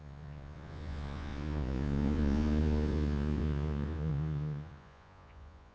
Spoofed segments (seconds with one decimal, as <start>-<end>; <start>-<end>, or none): 0.0-5.7